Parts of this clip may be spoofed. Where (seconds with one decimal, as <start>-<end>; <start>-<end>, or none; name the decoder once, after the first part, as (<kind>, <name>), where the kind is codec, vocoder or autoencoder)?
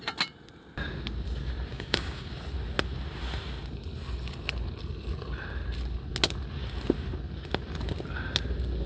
1.7-2.3 (codec, DAC)